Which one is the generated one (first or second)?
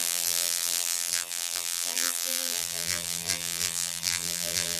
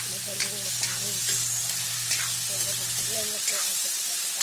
first